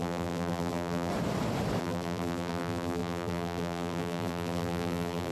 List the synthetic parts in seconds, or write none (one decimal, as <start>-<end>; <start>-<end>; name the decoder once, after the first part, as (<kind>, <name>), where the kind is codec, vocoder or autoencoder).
0.0-1.1 (vocoder, BigVGAN v2); 1.8-5.3